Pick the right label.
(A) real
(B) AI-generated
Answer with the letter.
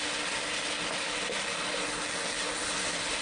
A